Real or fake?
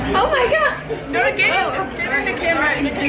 real